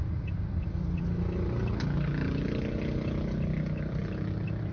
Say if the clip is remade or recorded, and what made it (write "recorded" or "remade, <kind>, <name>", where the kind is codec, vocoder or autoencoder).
recorded